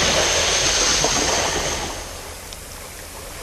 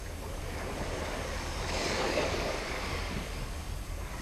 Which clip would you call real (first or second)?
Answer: first